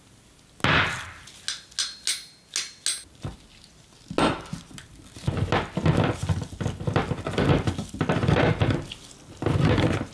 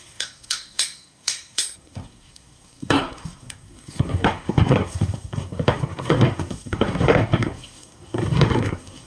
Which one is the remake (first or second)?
second